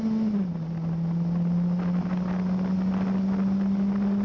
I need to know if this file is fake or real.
real